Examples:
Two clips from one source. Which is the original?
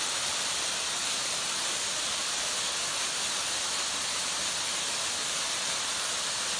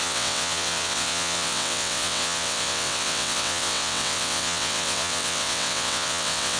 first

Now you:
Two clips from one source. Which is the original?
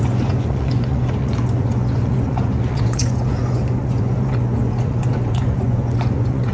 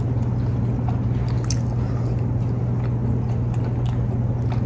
second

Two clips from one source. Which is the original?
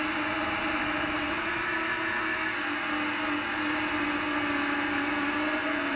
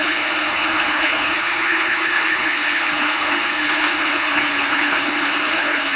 first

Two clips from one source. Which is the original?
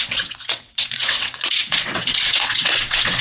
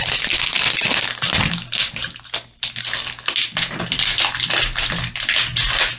second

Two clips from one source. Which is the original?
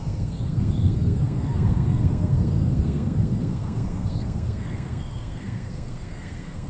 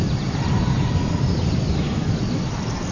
second